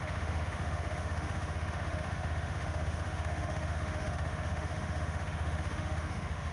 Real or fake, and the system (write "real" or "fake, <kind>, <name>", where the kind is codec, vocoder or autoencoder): fake, autoencoder, DAC-VAE